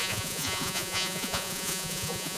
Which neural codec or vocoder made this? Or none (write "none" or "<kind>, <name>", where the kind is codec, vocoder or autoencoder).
vocoder, Vocos